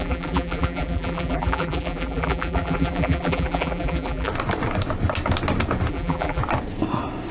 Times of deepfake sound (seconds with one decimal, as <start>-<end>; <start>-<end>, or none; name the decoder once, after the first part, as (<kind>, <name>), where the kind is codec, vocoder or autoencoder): 0.0-4.3 (vocoder, BigVGAN v2); 5.9-6.4